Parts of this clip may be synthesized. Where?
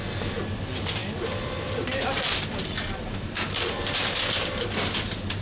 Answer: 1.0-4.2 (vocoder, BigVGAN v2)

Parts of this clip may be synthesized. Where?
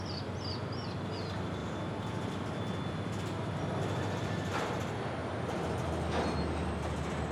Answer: none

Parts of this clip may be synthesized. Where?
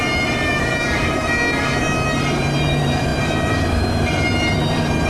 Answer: 0.0-1.2 (vocoder, BigVGAN v2); 1.8-5.1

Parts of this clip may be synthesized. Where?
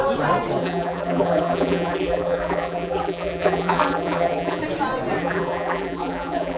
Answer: 0.6-4.6 (vocoder, BigVGAN v2); 5.2-6.6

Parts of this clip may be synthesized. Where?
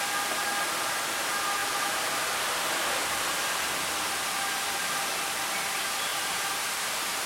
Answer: 1.6-2.6 (vocoder, BigVGAN v2); 6.1-7.3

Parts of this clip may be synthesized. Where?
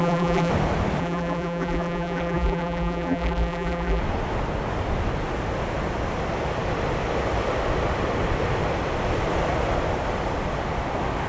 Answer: 0.0-0.5 (vocoder, BigVGAN v2); 1.0-4.0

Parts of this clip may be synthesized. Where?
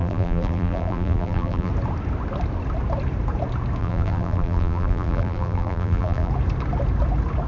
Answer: 0.0-1.7 (vocoder, BigVGAN v2); 3.8-6.3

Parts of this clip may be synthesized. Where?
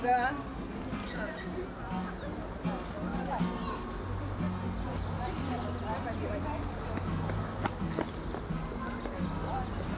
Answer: none